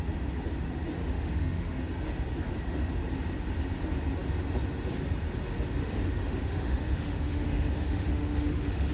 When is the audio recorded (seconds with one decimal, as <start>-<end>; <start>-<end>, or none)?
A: 0.0-1.0; 1.9-5.8

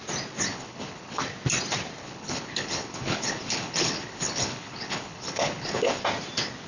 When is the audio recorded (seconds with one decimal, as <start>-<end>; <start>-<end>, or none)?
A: 0.0-0.5; 1.2-2.0; 6.0-6.7

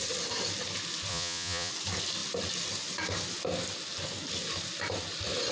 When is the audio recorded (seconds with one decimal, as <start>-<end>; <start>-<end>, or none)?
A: 0.0-1.1; 1.7-5.5

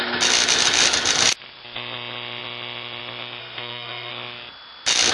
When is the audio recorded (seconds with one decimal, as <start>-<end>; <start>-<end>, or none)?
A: 0.0-3.4; 4.1-5.1

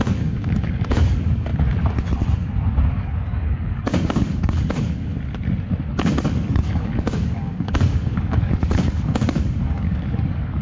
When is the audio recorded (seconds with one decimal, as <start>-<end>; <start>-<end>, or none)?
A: 1.5-2.9; 5.1-5.9

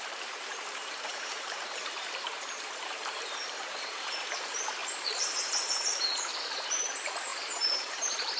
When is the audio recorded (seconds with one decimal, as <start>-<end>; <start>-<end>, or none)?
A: none

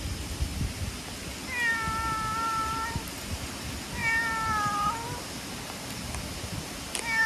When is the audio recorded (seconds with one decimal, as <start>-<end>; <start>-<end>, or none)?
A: 0.0-7.3

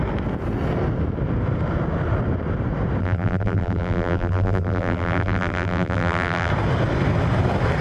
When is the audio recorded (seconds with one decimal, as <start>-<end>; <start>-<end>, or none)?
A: 0.0-3.0; 6.5-7.8